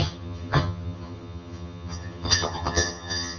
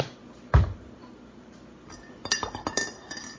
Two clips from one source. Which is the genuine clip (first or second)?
second